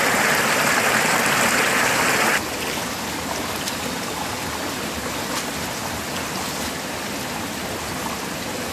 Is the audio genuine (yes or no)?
yes